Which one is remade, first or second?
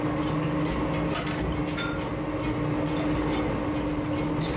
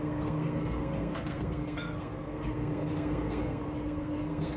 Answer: second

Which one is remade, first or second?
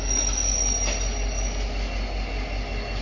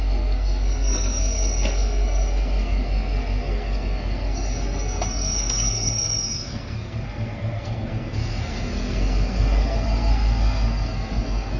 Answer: second